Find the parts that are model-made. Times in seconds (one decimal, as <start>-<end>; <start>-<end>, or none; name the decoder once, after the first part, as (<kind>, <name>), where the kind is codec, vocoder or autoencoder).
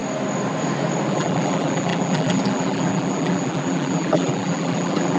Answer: 1.1-5.2 (vocoder, BigVGAN v2)